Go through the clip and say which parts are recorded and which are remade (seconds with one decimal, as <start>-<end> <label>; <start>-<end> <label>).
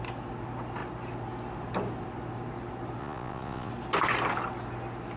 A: 0.0-3.0 recorded; 3.0-3.7 remade; 3.7-5.2 recorded